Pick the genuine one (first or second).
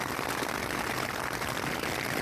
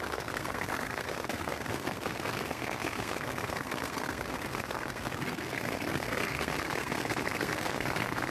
first